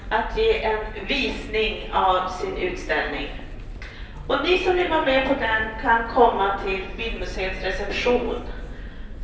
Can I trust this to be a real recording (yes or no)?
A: yes